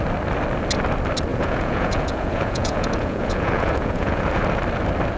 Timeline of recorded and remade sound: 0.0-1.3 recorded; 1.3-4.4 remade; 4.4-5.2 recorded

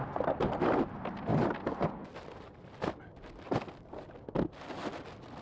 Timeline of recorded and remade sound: 0.0-5.4 recorded

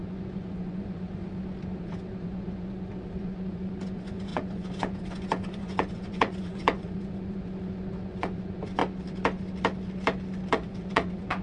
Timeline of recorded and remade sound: 0.0-1.2 remade; 1.2-1.8 recorded; 1.8-8.8 remade; 8.8-10.5 recorded; 10.5-11.4 remade